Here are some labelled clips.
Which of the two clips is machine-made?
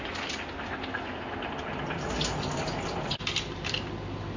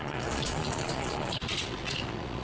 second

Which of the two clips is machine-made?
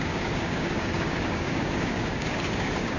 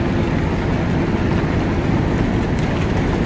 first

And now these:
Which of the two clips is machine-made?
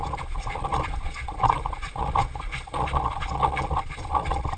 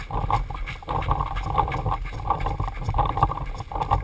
first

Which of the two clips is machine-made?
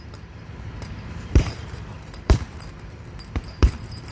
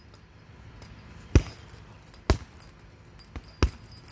first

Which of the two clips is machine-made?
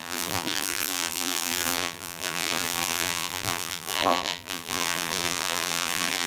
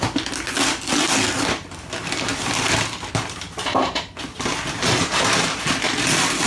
first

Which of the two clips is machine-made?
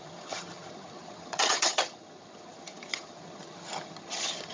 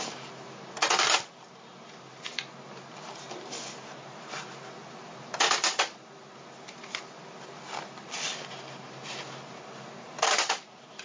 first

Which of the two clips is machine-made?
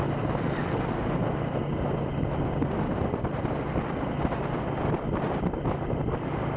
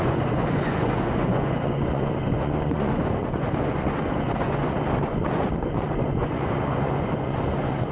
second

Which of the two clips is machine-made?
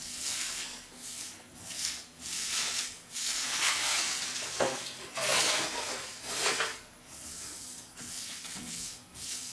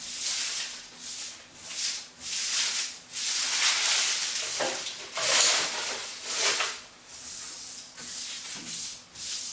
first